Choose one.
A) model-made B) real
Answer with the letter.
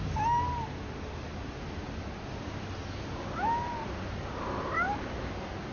B